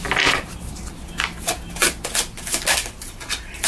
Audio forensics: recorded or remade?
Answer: recorded